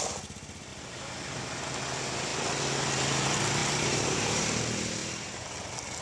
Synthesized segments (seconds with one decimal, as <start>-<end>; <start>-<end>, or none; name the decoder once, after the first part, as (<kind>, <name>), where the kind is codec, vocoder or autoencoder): 0.7-1.6 (vocoder, BigVGAN v2); 3.6-4.6; 5.0-5.5